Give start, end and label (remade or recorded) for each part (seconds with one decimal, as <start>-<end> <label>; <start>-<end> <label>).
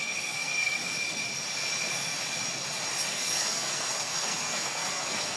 0.0-0.8 remade; 0.8-3.1 recorded; 3.1-5.4 remade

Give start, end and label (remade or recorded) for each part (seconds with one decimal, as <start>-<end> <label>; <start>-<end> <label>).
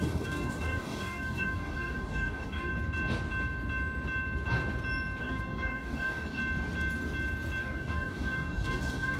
0.0-2.7 remade; 2.7-5.2 recorded; 5.2-6.4 remade; 6.4-7.6 recorded; 7.6-9.2 remade